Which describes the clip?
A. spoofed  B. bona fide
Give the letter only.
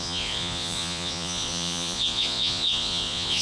A